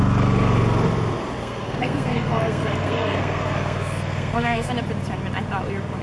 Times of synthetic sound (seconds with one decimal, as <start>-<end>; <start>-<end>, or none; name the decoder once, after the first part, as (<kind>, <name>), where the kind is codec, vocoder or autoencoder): 1.4-4.7 (codec, SNAC)